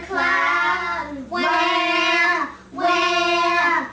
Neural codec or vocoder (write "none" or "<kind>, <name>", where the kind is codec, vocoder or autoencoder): none